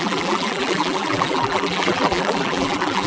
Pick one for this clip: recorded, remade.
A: remade